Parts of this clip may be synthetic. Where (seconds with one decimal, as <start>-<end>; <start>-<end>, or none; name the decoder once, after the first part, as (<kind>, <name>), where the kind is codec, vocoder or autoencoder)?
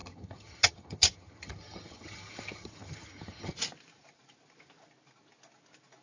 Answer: 0.0-3.6 (vocoder, HiFi-GAN)